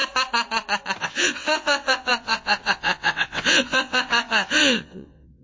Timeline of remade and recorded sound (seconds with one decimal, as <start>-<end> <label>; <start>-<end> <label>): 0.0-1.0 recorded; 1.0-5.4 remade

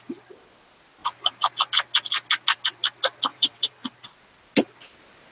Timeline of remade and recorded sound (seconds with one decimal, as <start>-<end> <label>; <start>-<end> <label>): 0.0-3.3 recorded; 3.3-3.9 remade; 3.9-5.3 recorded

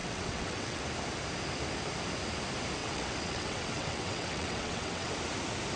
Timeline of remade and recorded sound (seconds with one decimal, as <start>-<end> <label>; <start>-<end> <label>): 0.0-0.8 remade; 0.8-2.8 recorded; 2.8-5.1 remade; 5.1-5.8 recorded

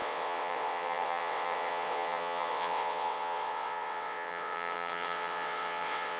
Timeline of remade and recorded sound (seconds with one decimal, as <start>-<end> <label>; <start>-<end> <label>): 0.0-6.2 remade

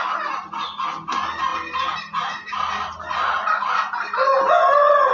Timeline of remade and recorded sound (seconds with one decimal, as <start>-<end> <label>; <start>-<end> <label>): 0.0-5.1 recorded

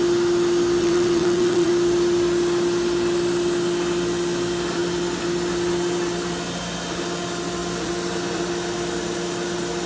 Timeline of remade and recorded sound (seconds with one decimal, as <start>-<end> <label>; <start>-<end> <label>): 0.0-0.8 recorded; 0.8-1.7 remade; 1.7-9.9 recorded

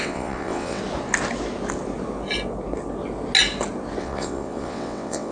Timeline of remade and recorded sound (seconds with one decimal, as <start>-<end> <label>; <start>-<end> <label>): 0.0-0.8 remade; 0.8-4.0 recorded; 4.0-5.3 remade